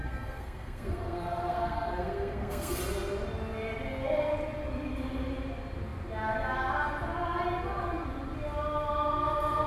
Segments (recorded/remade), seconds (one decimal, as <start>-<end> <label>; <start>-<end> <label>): 0.0-2.8 remade; 2.8-9.7 recorded

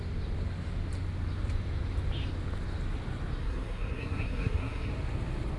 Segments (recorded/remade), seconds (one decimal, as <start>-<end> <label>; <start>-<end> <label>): 0.0-3.4 recorded; 3.4-4.9 remade; 4.9-5.6 recorded

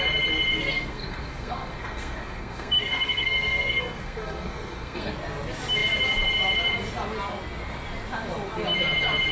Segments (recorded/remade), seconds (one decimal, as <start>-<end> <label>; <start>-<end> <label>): 0.0-0.5 recorded; 0.5-5.1 remade; 5.1-9.3 recorded

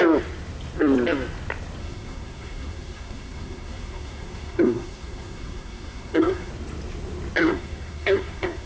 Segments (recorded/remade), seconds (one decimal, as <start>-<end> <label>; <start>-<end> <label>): 0.0-1.8 recorded; 1.8-6.5 remade; 6.5-7.4 recorded; 7.4-8.7 remade

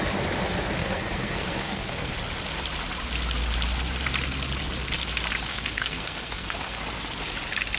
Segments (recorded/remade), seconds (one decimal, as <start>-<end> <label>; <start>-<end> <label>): 0.0-0.8 recorded; 0.8-2.1 remade; 2.1-5.5 recorded; 5.5-6.8 remade; 6.8-7.8 recorded

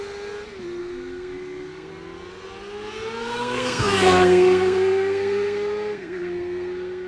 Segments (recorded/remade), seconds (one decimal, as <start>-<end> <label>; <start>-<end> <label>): 0.0-0.8 recorded; 0.8-1.9 remade; 1.9-3.2 recorded; 3.2-7.1 remade